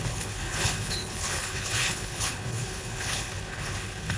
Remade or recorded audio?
remade